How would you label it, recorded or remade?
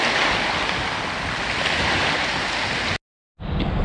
recorded